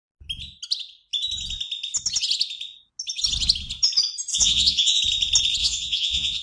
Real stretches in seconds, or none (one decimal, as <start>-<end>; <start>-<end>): 0.0-4.3; 5.0-5.6